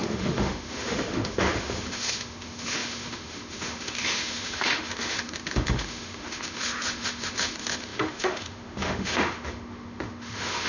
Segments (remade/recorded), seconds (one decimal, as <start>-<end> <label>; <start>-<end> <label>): 0.0-10.7 remade